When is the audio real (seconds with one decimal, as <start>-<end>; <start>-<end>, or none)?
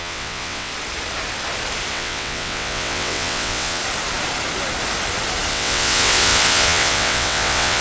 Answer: 0.7-1.9; 3.8-5.5